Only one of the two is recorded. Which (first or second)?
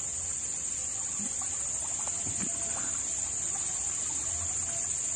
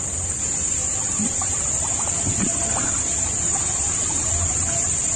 first